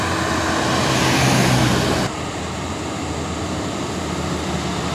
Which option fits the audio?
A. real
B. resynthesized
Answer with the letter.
A